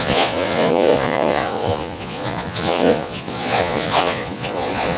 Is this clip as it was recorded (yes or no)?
no